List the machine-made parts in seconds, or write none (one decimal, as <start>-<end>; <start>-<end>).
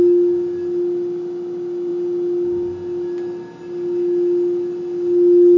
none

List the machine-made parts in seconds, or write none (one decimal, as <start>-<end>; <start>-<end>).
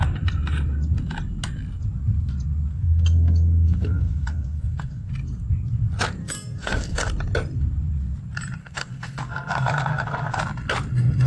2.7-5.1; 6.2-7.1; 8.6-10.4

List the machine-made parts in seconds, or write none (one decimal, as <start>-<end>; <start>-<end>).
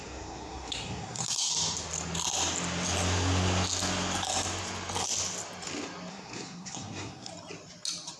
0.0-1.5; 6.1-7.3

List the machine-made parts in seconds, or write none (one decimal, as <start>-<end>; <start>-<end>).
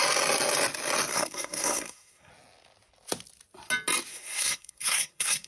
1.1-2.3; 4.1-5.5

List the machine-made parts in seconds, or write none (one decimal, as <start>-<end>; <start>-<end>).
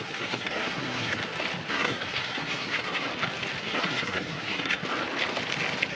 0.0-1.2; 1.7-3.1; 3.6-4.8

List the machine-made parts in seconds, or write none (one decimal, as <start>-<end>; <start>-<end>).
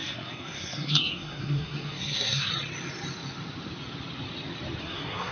0.0-2.5; 4.8-5.3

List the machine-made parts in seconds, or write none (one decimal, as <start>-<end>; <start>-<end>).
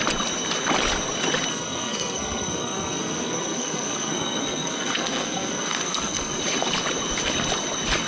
1.5-6.4